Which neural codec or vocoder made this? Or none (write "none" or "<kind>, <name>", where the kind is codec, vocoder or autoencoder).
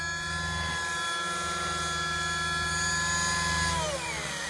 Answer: none